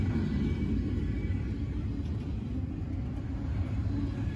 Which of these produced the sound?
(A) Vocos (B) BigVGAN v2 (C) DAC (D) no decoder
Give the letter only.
D